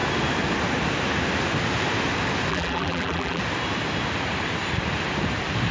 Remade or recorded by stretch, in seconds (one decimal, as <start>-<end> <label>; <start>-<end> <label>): 0.0-2.5 recorded; 2.5-3.4 remade; 3.4-5.7 recorded